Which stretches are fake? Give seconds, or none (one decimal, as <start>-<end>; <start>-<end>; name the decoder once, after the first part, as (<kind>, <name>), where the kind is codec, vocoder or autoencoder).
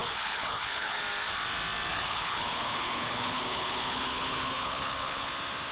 0.0-1.0 (codec, HILCodec); 1.9-5.3